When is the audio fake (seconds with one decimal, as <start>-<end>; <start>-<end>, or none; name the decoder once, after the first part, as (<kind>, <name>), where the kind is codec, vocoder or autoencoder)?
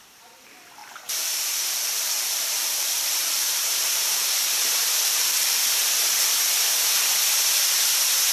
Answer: 0.8-4.4 (vocoder, BigVGAN v2); 5.0-5.6